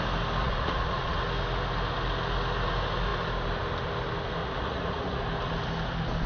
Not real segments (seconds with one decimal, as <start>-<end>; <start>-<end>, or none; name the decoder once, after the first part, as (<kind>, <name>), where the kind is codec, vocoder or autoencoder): 0.4-1.2 (vocoder, Vocos); 4.4-5.2